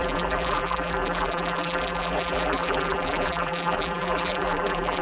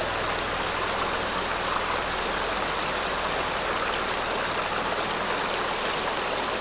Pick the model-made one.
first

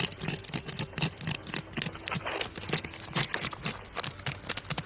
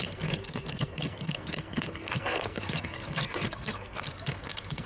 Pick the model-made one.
second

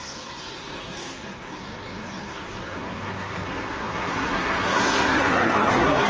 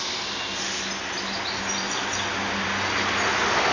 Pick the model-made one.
first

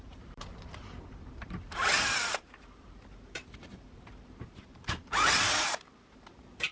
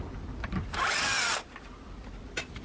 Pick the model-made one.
first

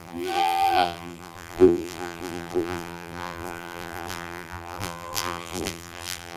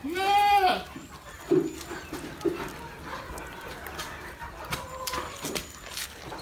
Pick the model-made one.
first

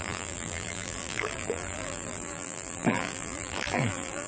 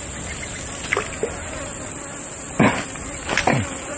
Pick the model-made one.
first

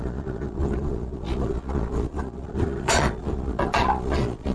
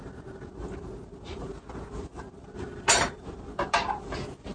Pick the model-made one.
first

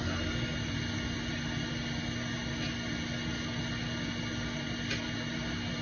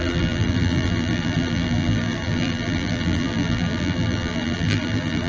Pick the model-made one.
second